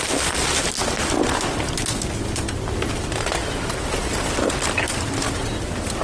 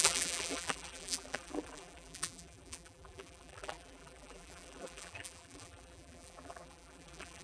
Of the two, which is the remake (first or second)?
second